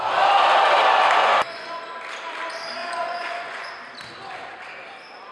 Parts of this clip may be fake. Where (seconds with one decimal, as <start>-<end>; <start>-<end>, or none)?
1.2-1.8; 2.8-3.7